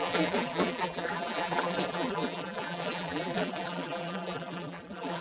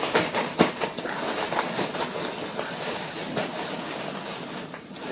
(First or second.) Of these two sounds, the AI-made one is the first